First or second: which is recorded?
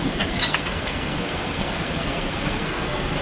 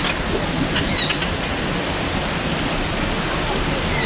second